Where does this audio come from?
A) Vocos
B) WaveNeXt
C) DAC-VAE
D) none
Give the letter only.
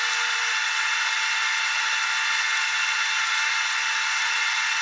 D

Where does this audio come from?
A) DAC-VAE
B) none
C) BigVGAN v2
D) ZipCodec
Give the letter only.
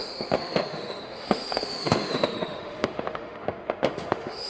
A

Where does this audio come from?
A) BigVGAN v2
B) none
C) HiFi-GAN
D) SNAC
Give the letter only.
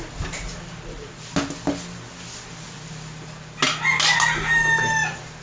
B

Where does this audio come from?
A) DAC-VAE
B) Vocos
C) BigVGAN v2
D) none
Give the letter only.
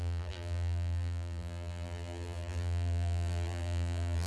C